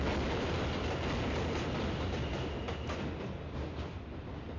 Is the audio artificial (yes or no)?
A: no